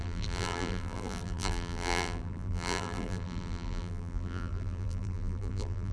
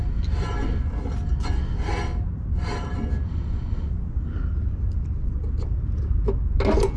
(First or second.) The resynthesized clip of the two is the first